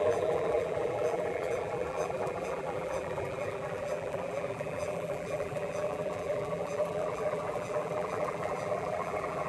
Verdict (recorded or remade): remade